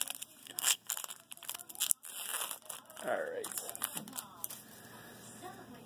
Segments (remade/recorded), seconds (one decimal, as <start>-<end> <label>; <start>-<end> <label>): 0.0-0.4 recorded; 0.4-0.9 remade; 0.9-5.9 recorded